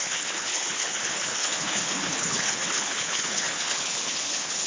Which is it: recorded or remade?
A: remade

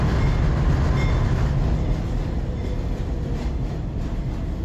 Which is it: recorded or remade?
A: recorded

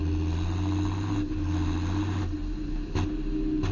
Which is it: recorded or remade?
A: recorded